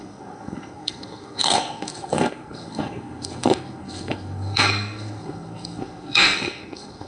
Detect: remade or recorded remade